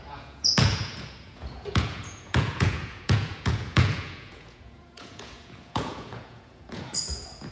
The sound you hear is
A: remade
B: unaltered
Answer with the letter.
A